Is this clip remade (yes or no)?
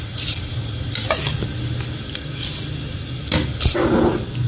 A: no